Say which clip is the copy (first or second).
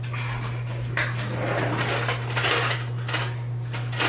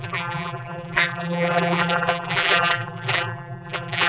second